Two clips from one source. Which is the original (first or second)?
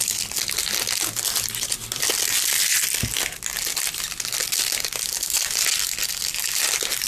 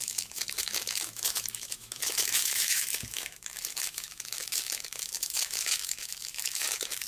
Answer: first